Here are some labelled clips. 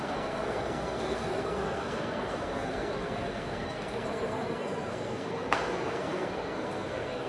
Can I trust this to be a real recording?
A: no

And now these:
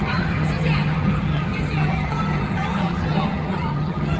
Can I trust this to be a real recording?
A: no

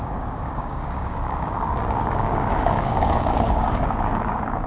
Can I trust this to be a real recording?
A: no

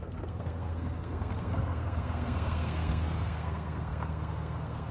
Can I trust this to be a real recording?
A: no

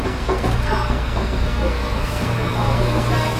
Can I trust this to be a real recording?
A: no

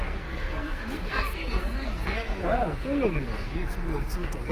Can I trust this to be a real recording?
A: no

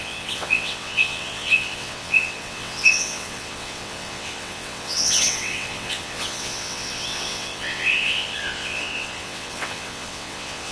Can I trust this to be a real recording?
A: no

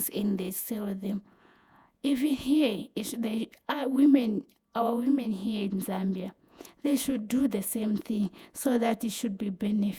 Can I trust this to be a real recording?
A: no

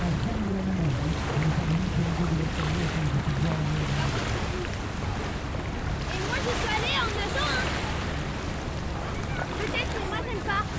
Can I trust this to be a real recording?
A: yes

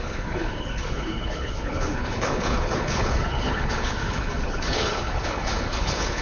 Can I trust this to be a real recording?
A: no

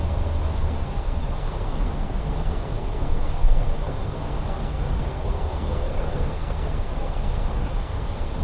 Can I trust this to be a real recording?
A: no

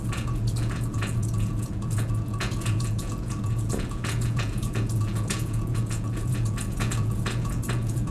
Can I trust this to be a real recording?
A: no